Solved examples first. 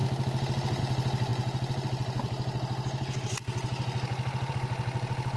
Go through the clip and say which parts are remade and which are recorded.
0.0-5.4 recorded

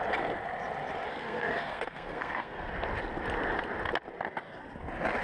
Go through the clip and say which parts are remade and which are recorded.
0.0-1.1 recorded; 1.1-2.7 remade; 2.7-5.2 recorded

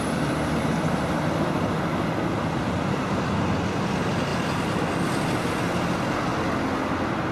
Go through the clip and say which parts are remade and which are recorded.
0.0-7.3 recorded

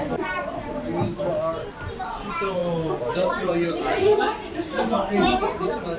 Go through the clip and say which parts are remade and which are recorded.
0.0-1.1 remade; 1.1-1.9 recorded; 1.9-4.3 remade; 4.3-5.5 recorded; 5.5-6.0 remade

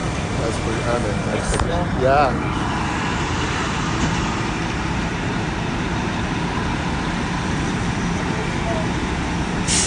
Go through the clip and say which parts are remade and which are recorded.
0.0-1.7 remade; 1.7-3.1 recorded; 3.1-7.9 remade; 7.9-9.9 recorded

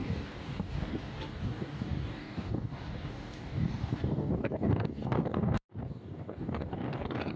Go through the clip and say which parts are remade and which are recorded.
0.0-7.4 remade